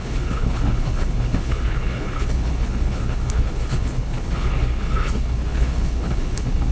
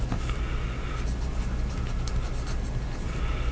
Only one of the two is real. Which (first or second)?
second